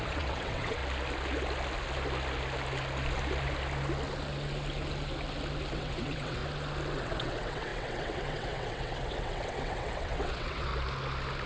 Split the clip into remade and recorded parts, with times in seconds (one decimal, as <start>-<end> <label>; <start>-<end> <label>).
0.0-0.8 remade; 0.8-5.7 recorded; 5.7-6.4 remade; 6.4-6.9 recorded; 6.9-10.7 remade; 10.7-11.5 recorded